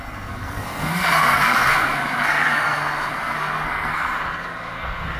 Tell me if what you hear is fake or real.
fake